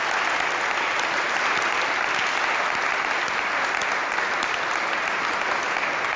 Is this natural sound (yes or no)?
yes